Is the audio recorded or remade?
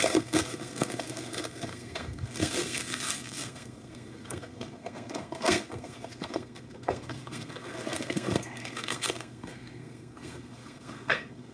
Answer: remade